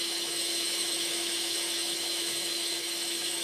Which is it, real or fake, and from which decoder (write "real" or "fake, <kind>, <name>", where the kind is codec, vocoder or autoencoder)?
fake, autoencoder, DAC-VAE